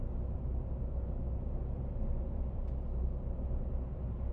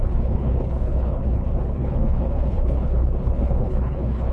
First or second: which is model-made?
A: second